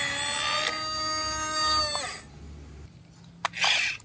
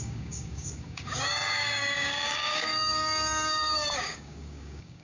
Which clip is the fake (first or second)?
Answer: second